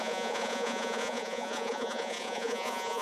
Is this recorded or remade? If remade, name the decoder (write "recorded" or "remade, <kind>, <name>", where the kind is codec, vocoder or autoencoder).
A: remade, vocoder, Vocos